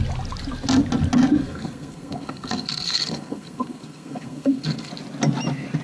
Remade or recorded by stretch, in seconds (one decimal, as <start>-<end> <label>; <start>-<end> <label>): 0.0-1.4 recorded; 1.4-4.9 remade; 4.9-5.8 recorded